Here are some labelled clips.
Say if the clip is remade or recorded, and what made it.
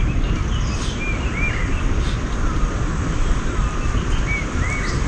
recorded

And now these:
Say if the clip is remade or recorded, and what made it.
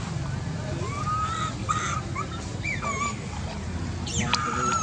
recorded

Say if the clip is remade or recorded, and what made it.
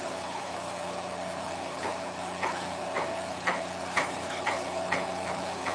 remade, codec, HILCodec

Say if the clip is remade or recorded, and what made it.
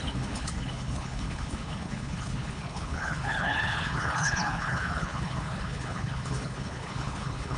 remade, codec, HILCodec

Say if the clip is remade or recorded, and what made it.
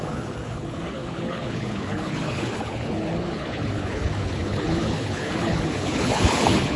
remade, codec, HILCodec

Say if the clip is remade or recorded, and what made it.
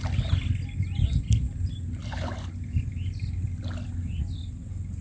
recorded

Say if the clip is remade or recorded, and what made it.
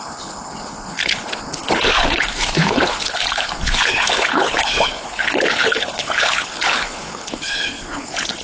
remade, codec, HILCodec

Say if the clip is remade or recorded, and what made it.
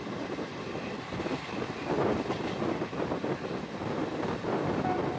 recorded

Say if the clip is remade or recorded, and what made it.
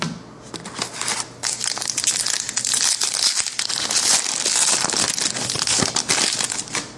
recorded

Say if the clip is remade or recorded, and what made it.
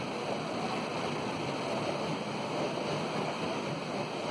recorded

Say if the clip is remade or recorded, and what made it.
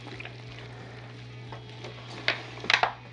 recorded